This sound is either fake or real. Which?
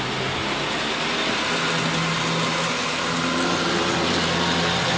real